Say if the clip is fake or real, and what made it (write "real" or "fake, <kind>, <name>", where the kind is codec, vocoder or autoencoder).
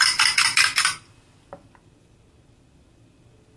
real